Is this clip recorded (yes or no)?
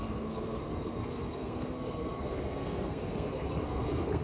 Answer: no